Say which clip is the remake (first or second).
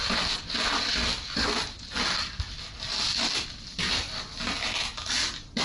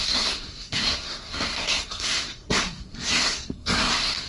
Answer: second